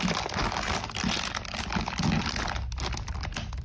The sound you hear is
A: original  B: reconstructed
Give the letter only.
A